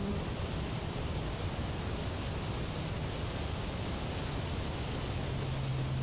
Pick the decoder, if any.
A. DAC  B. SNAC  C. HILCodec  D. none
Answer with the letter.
D